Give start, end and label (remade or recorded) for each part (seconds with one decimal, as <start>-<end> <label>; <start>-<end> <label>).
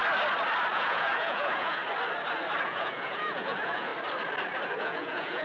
0.0-0.7 recorded; 0.7-1.8 remade; 1.8-2.6 recorded; 2.6-3.9 remade; 3.9-4.8 recorded; 4.8-5.4 remade